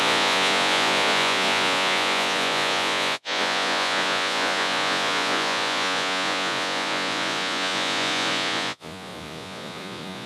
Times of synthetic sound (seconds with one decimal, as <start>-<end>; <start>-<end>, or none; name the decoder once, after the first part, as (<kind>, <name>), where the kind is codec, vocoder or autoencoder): 0.0-10.3 (vocoder, Vocos)